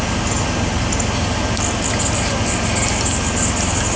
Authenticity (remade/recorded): recorded